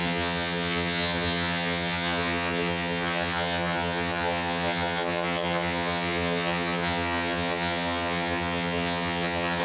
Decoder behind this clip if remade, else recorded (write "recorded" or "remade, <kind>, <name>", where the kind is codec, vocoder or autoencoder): remade, vocoder, HiFi-GAN